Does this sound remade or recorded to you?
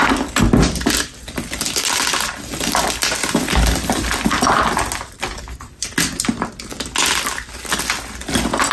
recorded